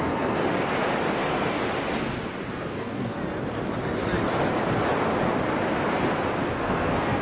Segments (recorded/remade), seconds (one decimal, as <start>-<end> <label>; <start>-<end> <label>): 0.0-0.4 remade; 0.4-1.1 recorded; 1.1-1.6 remade; 1.6-2.5 recorded; 2.5-3.2 remade; 3.2-6.5 recorded; 6.5-7.2 remade